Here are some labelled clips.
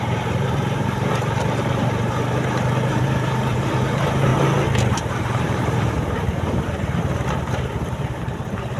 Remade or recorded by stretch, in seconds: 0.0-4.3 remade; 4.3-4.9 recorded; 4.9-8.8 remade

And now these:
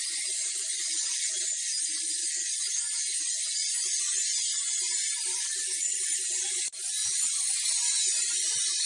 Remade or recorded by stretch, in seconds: 0.0-2.2 remade; 2.2-4.0 recorded; 4.0-7.0 remade; 7.0-8.0 recorded; 8.0-8.9 remade

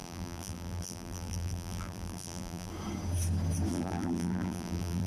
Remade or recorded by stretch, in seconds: 0.0-2.7 remade; 2.7-3.7 recorded; 3.7-5.1 remade

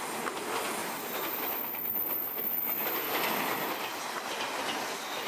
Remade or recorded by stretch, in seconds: 0.0-5.3 recorded

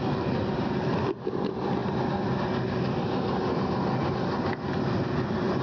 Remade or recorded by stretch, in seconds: 0.0-5.6 recorded

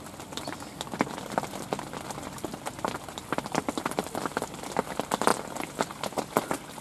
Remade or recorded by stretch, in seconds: 0.0-6.8 recorded